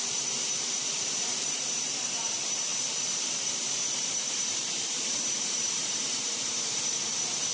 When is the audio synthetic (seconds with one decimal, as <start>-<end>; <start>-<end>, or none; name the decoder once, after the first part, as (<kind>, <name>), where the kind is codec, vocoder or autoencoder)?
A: 0.0-7.5 (vocoder, BigVGAN v2)